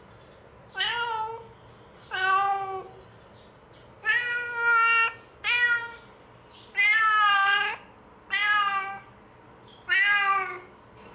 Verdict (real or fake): real